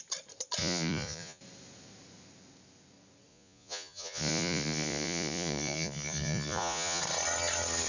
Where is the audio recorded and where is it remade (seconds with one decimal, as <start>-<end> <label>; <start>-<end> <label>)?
0.0-0.6 recorded; 0.6-1.4 remade; 1.4-3.3 recorded; 3.3-7.0 remade; 7.0-7.9 recorded